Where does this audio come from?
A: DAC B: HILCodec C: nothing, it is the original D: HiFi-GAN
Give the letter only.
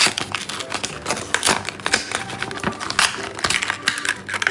C